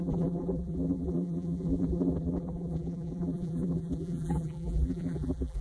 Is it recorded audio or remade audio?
remade